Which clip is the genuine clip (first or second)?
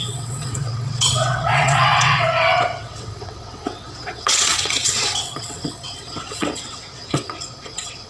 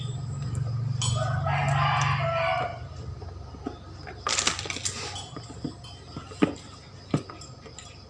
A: second